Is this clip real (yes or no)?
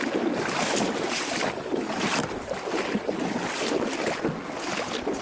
yes